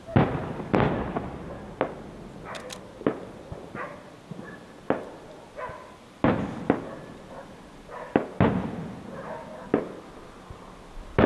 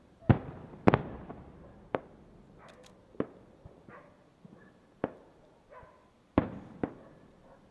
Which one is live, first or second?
first